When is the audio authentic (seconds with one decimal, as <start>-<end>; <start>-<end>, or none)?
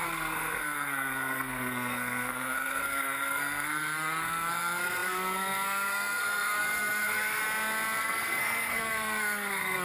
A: 7.4-8.0